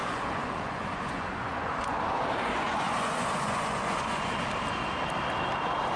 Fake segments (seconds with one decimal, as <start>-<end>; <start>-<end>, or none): 0.0-2.0; 2.6-4.3